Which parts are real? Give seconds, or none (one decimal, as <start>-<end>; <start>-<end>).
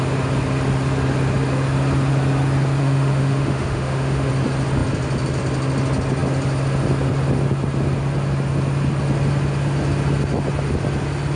0.0-2.8; 4.3-11.4